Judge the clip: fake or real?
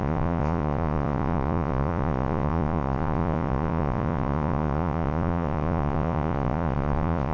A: fake